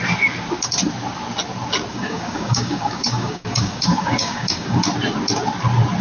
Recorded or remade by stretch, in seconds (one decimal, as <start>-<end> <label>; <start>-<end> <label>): 0.0-1.9 recorded; 1.9-4.8 remade; 4.8-6.0 recorded